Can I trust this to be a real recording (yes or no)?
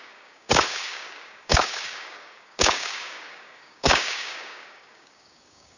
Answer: no